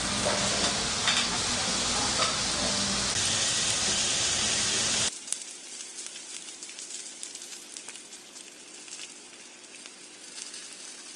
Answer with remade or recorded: recorded